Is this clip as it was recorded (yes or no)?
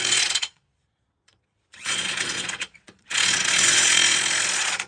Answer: no